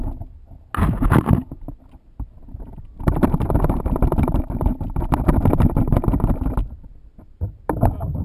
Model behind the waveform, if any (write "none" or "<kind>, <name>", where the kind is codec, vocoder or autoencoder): none